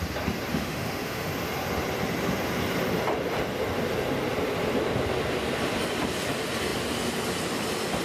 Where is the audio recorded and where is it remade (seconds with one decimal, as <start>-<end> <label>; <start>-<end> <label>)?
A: 0.0-0.5 recorded; 0.5-1.3 remade; 1.3-8.0 recorded